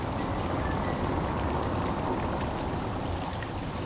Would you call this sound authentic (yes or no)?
yes